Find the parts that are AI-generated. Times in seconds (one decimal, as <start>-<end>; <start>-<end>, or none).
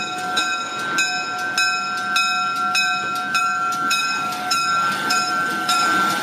0.0-0.7; 3.4-6.2